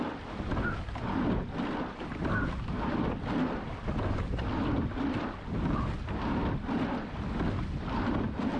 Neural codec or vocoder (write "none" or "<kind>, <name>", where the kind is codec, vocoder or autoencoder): none